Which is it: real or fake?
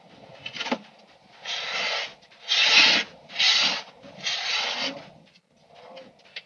real